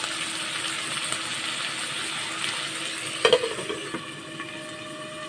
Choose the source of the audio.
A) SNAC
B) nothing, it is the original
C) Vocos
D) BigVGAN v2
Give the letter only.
B